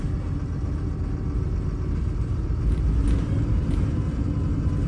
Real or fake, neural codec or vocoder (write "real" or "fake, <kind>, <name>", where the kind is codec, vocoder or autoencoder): real